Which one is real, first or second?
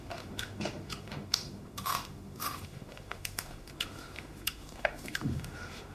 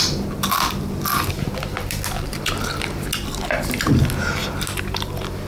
second